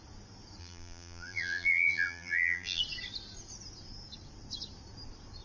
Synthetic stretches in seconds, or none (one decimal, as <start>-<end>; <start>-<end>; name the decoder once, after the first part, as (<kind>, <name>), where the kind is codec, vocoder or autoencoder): 0.6-2.8 (vocoder, BigVGAN v2)